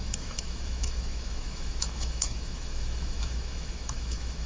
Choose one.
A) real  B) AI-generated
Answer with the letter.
B